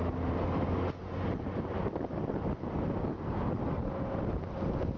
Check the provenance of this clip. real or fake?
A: real